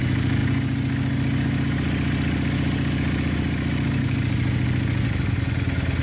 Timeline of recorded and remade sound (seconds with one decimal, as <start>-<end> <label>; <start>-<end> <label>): 0.0-6.0 recorded